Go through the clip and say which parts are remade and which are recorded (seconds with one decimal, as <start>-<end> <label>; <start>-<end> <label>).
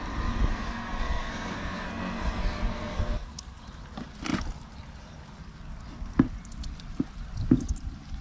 0.0-0.5 recorded; 0.5-3.6 remade; 3.6-8.2 recorded